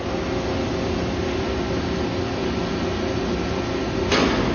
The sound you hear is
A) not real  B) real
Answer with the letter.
B